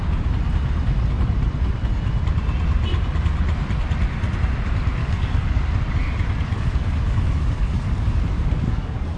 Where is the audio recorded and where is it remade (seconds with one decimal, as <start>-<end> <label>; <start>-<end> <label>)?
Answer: 0.0-5.0 recorded; 5.0-5.7 remade; 5.7-6.5 recorded; 6.5-9.2 remade